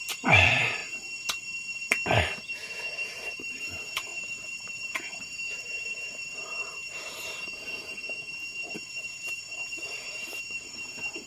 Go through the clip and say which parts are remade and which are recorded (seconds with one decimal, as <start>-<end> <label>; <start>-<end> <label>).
0.0-0.8 remade; 0.8-2.8 recorded; 2.8-11.3 remade

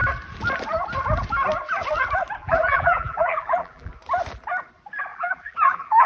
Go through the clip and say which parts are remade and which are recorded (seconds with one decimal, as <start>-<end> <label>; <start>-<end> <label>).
0.0-2.4 recorded; 2.4-3.9 remade; 3.9-5.1 recorded; 5.1-6.1 remade

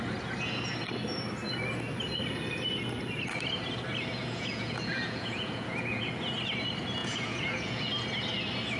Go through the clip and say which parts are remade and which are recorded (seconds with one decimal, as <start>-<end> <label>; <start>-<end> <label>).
0.0-4.2 recorded; 4.2-6.1 remade; 6.1-7.0 recorded; 7.0-7.9 remade; 7.9-8.8 recorded

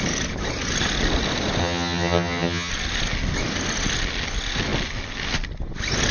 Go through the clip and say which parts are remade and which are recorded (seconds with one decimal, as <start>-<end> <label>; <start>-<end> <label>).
0.0-1.6 recorded; 1.6-2.7 remade; 2.7-6.1 recorded

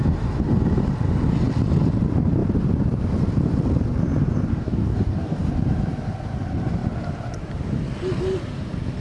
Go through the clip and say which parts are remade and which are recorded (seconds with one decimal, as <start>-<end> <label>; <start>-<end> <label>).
0.0-4.5 recorded; 4.5-5.5 remade; 5.5-9.0 recorded

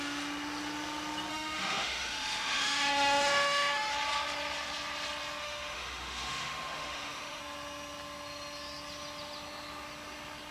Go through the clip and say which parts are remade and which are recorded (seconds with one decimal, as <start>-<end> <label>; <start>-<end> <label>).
0.0-1.3 recorded; 1.3-3.9 remade; 3.9-5.4 recorded; 5.4-7.4 remade; 7.4-10.5 recorded

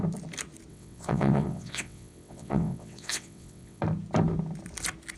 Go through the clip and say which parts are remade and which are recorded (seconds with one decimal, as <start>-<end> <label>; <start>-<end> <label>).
0.0-0.7 recorded; 0.7-3.8 remade; 3.8-5.2 recorded

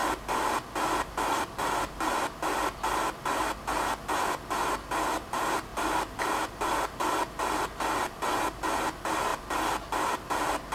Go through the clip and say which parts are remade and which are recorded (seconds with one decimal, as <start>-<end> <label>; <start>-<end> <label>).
0.0-10.7 recorded